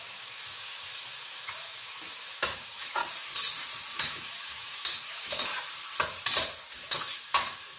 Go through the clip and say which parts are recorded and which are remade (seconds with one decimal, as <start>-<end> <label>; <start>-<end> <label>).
0.0-3.0 remade; 3.0-3.9 recorded; 3.9-5.5 remade; 5.5-6.7 recorded; 6.7-7.8 remade